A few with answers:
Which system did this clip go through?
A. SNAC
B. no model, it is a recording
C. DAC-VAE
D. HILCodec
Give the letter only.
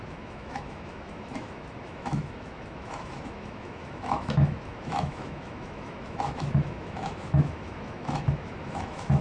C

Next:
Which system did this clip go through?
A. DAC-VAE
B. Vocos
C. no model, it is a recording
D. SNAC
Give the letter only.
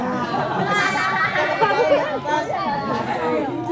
C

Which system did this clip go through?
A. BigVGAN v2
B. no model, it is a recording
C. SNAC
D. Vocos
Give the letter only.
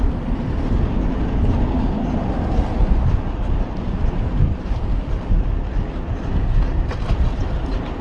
B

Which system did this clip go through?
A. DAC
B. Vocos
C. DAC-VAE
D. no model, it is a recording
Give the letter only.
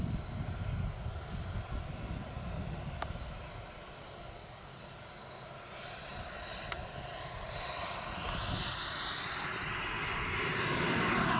D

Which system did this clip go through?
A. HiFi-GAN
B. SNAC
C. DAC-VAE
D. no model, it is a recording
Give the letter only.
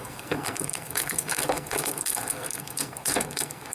B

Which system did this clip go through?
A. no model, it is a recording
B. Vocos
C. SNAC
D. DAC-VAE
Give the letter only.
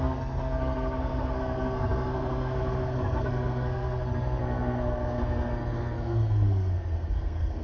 C